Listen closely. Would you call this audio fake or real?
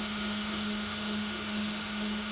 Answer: fake